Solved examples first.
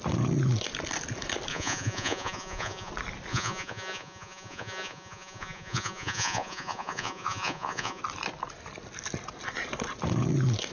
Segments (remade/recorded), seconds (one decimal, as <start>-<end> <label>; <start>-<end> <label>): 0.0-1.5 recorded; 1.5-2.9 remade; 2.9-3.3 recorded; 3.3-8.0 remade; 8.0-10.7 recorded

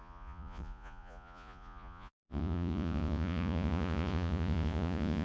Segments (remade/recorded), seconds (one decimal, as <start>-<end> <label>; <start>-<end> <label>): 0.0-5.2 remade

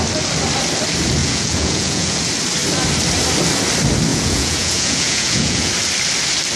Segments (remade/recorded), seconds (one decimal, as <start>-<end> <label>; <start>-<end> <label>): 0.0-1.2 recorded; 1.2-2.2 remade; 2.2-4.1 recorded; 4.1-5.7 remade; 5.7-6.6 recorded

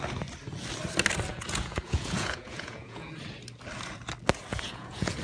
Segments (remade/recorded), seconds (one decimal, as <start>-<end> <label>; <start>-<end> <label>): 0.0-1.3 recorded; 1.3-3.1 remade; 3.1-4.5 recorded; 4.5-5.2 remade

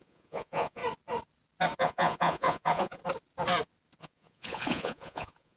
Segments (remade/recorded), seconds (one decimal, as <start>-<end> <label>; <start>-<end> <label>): 0.0-0.8 remade; 0.8-1.8 recorded; 1.8-3.0 remade; 3.0-4.0 recorded; 4.0-5.6 remade